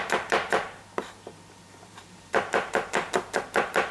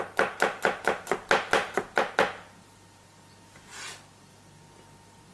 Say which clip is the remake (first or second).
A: first